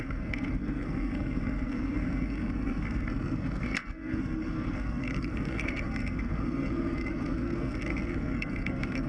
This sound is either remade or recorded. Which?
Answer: remade